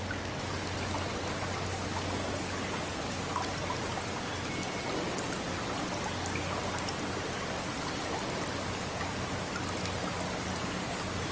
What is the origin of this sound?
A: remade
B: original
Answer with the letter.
B